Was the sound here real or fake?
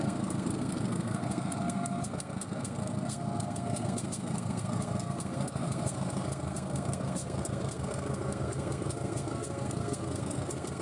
fake